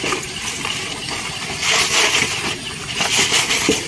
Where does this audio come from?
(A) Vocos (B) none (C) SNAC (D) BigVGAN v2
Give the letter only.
D